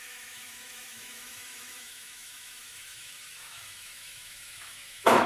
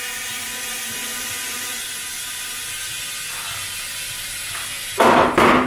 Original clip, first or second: second